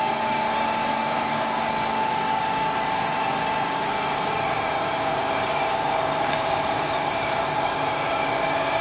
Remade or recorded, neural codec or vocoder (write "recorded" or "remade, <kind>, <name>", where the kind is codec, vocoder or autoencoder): remade, codec, DAC